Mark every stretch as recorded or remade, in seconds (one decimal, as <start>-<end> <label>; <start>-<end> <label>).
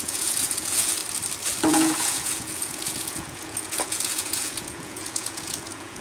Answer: 0.0-1.0 remade; 1.0-1.7 recorded; 1.7-6.0 remade